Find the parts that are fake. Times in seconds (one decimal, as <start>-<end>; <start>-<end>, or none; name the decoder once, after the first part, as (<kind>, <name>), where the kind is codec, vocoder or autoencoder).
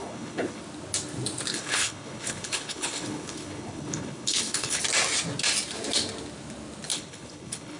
0.0-0.6 (codec, HILCodec); 1.5-4.8; 6.9-7.8